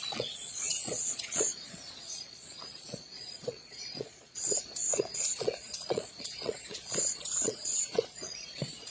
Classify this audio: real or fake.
fake